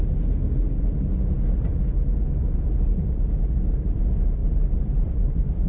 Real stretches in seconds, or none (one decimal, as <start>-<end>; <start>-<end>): 0.0-4.4